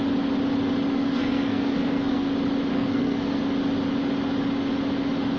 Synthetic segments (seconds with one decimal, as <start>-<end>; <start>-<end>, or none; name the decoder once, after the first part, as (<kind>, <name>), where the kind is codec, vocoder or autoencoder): 0.9-2.3 (codec, SNAC); 2.7-3.4